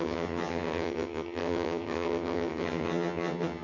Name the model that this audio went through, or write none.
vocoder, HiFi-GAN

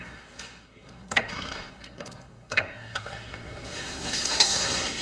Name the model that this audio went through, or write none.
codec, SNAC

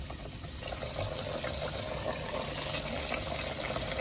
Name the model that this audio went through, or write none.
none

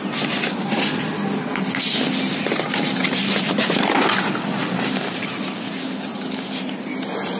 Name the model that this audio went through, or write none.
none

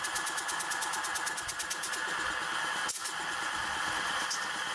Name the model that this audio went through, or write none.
none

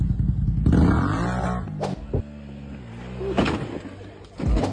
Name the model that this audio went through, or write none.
none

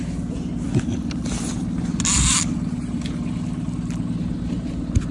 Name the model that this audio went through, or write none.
none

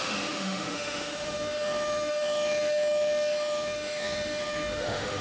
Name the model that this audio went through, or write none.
autoencoder, DAC-VAE